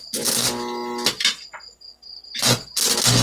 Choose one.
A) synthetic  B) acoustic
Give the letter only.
B